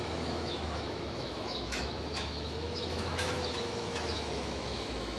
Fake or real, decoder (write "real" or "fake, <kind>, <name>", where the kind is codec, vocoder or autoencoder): fake, autoencoder, DAC-VAE